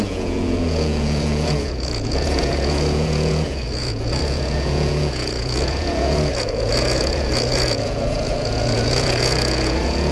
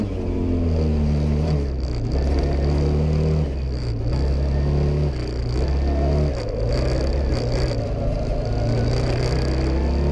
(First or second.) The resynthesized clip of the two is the first